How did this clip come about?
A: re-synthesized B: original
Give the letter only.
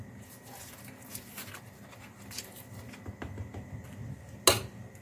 B